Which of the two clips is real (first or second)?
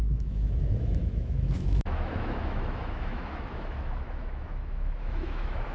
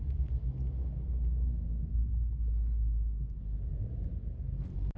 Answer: second